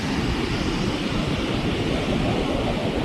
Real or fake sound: real